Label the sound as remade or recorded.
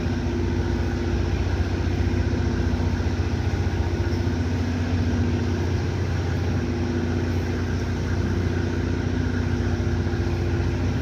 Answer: recorded